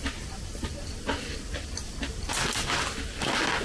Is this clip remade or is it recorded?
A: recorded